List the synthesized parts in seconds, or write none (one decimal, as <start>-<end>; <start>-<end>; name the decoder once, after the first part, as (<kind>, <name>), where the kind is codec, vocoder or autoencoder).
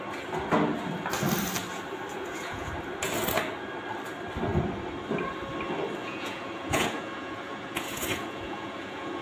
2.1-2.7 (vocoder, Vocos); 6.0-9.2